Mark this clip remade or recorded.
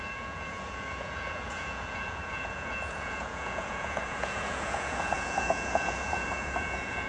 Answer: remade